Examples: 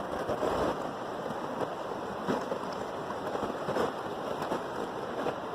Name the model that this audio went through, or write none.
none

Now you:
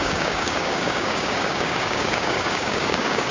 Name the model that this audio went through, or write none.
codec, DAC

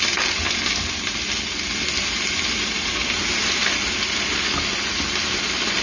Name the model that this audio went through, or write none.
none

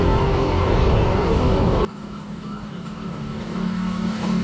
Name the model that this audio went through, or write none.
codec, DAC